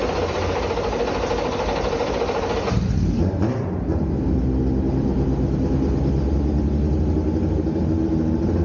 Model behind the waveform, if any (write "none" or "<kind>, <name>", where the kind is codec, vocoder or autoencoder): none